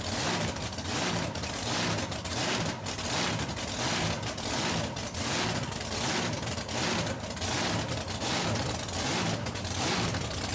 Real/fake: real